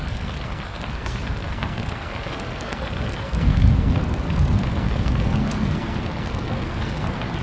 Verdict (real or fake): fake